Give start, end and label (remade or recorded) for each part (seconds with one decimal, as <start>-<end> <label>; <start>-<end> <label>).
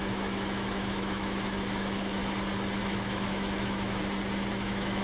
0.0-2.2 remade; 2.2-2.8 recorded; 2.8-4.0 remade; 4.0-4.5 recorded; 4.5-5.0 remade